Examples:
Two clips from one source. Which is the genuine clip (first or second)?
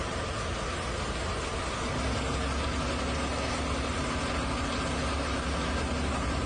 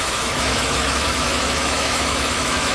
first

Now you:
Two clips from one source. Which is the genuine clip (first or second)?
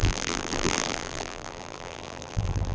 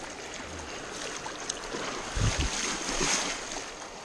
second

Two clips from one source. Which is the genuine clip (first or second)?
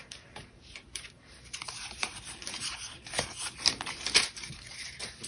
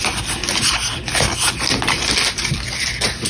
second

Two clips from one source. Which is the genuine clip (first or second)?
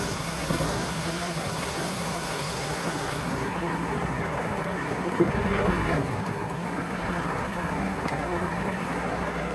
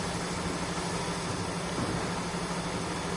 second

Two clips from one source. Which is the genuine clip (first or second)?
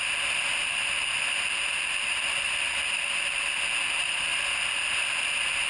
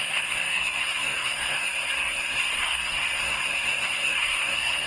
first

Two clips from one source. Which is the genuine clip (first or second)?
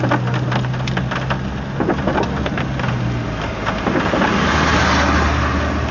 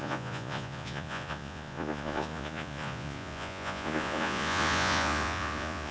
first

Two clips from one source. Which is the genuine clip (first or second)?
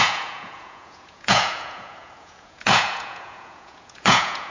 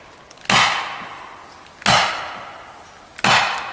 second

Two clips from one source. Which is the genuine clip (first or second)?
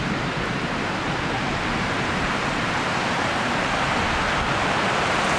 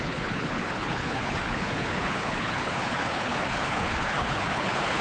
first